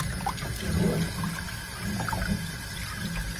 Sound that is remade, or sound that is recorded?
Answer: recorded